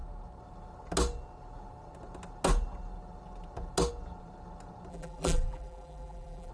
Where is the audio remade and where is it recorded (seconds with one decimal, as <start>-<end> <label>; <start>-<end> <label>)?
0.0-4.9 recorded; 4.9-6.5 remade